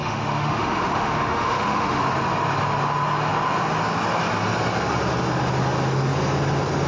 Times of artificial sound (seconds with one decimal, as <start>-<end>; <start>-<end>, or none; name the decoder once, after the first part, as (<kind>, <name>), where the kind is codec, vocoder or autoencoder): 0.0-2.0 (autoencoder, DAC-VAE)